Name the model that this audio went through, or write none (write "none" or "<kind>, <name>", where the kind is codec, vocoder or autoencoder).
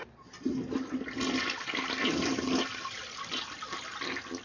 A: none